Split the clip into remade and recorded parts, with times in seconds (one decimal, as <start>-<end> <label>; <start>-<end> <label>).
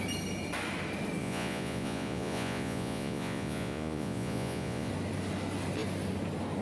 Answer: 0.0-1.2 recorded; 1.2-4.9 remade; 4.9-6.6 recorded